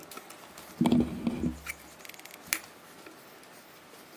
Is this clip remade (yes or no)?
no